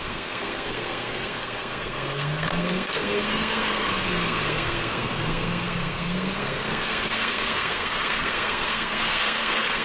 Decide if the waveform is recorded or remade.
remade